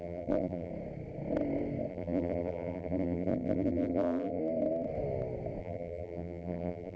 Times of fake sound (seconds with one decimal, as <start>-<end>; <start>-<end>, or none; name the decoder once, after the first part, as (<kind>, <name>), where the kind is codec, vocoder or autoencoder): 0.0-0.7 (vocoder, BigVGAN v2); 1.9-4.4; 5.6-7.0